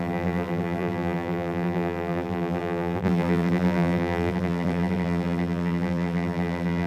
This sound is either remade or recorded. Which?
remade